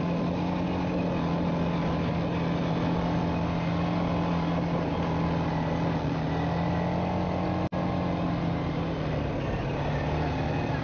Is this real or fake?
real